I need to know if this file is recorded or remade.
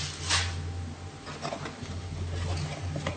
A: recorded